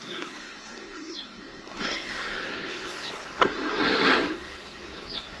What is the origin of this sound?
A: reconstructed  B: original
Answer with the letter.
A